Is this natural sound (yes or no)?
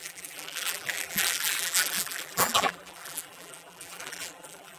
no